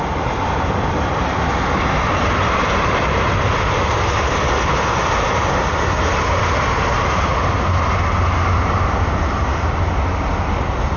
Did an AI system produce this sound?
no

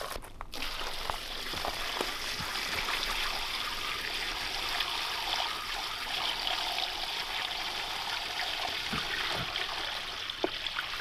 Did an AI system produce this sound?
no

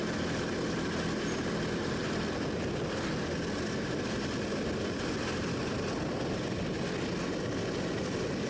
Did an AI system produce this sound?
no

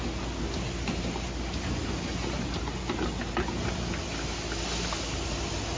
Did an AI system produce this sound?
no